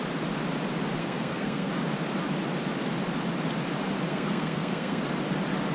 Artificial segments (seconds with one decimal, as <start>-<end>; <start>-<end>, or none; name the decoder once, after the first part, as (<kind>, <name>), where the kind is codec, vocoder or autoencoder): 1.0-1.7 (codec, SNAC); 4.1-5.0